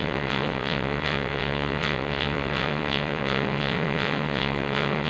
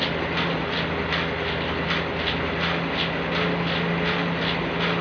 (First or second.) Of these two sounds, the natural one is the second